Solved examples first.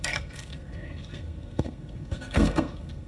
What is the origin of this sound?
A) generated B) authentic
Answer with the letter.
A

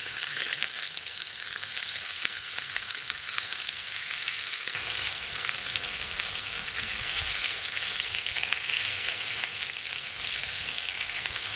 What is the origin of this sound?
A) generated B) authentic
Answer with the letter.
A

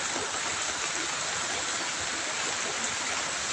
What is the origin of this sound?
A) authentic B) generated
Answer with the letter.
A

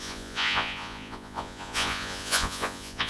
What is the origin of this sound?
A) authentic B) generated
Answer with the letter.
B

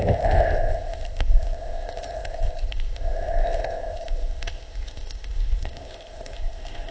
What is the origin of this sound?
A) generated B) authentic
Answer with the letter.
A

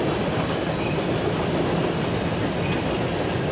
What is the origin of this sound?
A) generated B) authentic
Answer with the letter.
B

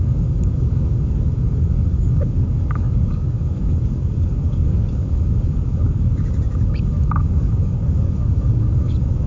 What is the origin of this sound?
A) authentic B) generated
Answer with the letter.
B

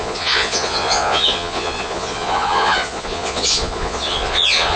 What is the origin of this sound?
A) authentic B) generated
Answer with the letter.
B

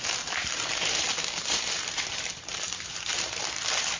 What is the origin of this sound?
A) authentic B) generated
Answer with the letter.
B